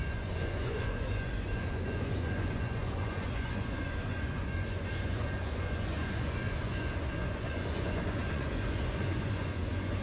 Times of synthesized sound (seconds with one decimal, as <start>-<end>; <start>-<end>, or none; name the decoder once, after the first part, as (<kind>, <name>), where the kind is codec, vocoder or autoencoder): 0.0-10.0 (vocoder, Vocos)